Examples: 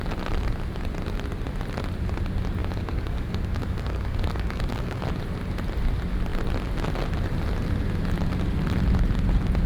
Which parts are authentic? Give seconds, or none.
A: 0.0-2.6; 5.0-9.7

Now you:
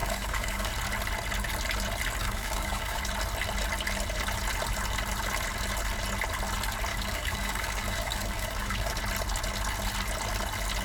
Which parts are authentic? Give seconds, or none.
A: 0.7-2.2; 3.0-6.9; 9.0-10.8

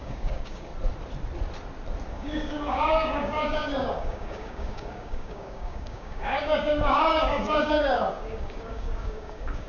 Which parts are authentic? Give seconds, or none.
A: 0.7-2.1

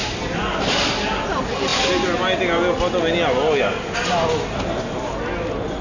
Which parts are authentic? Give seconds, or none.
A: 0.0-5.8

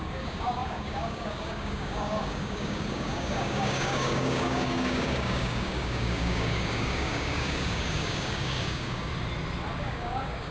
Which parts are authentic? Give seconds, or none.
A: 9.1-9.8

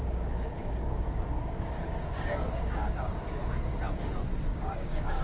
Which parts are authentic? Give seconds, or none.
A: 3.7-4.5

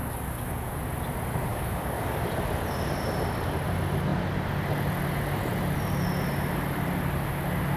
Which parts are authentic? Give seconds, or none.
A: 0.8-1.5; 2.2-7.8

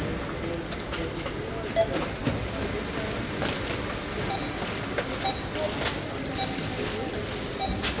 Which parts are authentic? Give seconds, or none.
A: 0.0-8.0